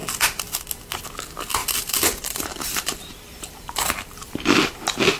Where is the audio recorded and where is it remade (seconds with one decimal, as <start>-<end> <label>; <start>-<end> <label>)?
0.0-1.6 recorded; 1.6-4.3 remade; 4.3-5.2 recorded